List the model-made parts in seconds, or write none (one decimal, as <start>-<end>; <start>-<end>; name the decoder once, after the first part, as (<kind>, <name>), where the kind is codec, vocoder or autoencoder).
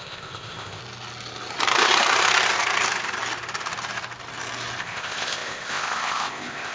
0.0-0.8 (codec, ZipCodec); 4.8-6.7